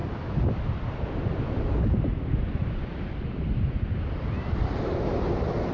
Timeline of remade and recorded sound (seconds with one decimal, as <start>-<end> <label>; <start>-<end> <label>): 0.0-1.5 remade; 1.5-2.6 recorded; 2.6-4.9 remade; 4.9-5.7 recorded